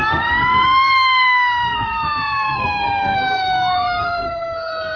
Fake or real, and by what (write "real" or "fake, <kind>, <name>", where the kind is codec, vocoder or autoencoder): fake, codec, SNAC